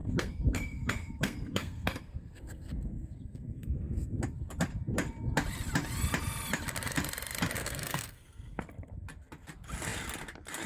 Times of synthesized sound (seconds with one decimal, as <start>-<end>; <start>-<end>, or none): 0.0-4.1; 7.6-8.6